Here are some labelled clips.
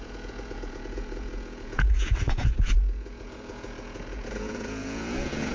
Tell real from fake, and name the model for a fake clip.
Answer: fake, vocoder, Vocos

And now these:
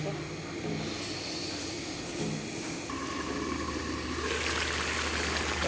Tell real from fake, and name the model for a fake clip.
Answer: real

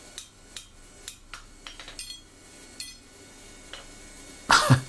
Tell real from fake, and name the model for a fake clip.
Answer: real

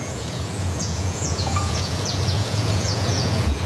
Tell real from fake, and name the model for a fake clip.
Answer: fake, vocoder, Vocos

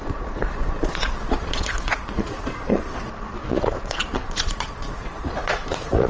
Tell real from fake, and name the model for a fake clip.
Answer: fake, vocoder, Vocos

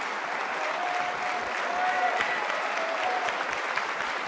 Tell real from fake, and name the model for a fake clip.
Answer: real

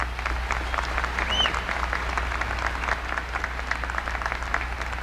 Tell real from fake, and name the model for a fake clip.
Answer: real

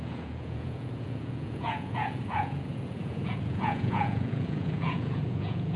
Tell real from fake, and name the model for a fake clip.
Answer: fake, vocoder, Vocos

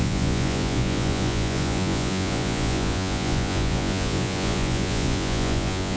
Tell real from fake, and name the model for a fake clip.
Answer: fake, vocoder, Vocos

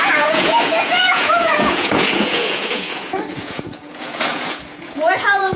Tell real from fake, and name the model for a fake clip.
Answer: fake, vocoder, Vocos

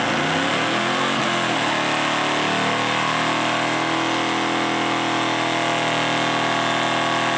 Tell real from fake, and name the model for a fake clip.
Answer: real